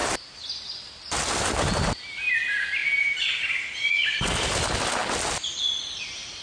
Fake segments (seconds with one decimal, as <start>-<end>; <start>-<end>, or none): none